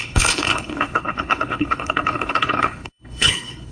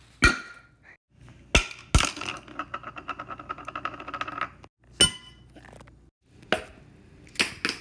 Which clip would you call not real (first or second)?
first